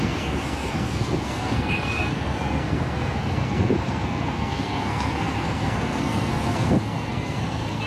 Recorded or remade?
remade